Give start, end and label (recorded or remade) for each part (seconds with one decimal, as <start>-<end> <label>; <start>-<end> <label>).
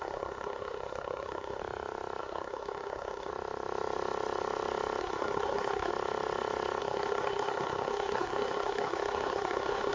0.0-1.6 remade; 1.6-2.2 recorded; 2.2-3.3 remade; 3.3-5.0 recorded; 5.0-5.9 remade; 5.9-6.8 recorded; 6.8-9.9 remade